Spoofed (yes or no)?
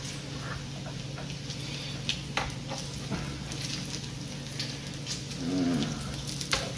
no